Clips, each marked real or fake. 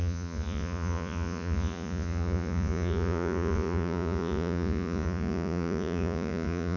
fake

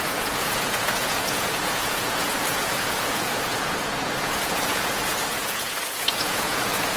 fake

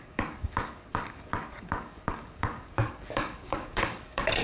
fake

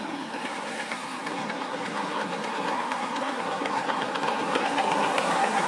fake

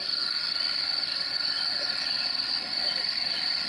real